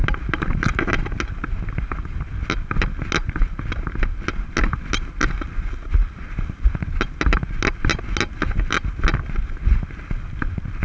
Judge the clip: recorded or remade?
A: recorded